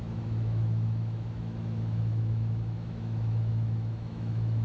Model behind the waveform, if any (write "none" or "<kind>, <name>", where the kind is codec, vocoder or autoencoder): autoencoder, DAC-VAE